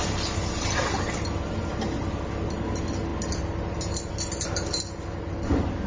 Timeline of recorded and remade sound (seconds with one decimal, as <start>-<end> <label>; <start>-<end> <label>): 0.0-5.9 recorded